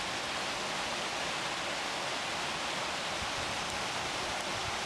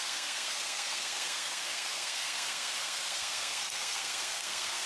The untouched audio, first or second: first